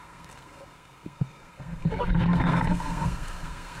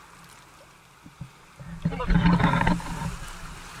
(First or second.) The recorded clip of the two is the second